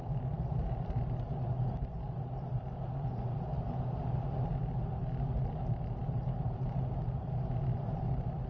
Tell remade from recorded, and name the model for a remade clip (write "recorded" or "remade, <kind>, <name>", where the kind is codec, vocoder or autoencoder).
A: recorded